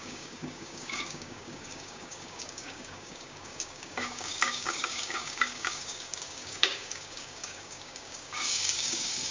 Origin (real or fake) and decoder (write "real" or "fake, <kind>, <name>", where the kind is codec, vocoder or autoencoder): fake, codec, DAC